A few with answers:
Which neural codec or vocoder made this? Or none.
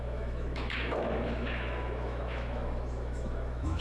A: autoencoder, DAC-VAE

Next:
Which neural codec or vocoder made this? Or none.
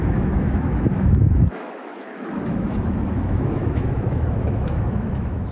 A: autoencoder, DAC-VAE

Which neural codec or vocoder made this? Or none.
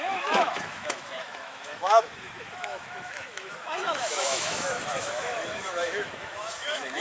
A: autoencoder, DAC-VAE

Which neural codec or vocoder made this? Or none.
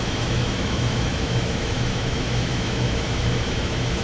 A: autoencoder, DAC-VAE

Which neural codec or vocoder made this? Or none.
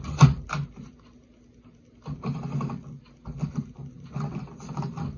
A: none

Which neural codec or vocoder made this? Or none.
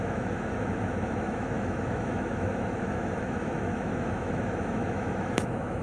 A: autoencoder, DAC-VAE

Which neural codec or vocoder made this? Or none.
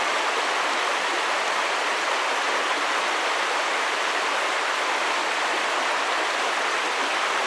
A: none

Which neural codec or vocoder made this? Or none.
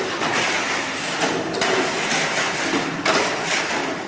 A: none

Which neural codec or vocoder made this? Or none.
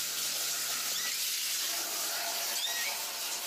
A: none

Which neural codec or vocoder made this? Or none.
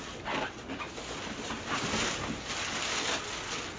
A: none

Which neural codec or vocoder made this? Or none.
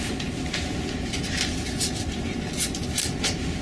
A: none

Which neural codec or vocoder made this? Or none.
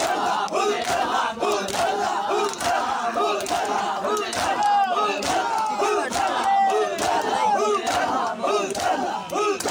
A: none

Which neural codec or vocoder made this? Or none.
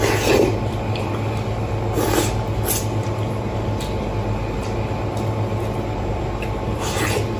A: none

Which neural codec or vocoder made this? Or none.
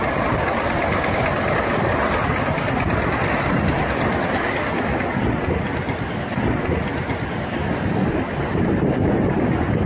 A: none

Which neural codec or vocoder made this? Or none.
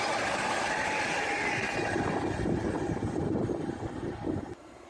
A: none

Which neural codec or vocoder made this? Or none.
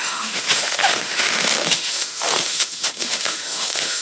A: autoencoder, DAC-VAE